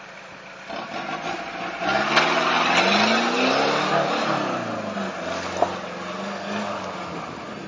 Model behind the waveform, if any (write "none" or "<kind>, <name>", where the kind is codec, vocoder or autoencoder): none